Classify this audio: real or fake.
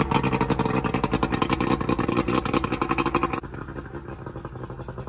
real